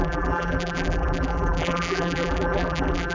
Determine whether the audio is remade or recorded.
remade